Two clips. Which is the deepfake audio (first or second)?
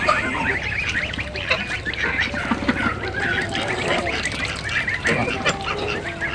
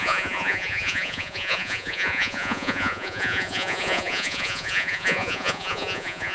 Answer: second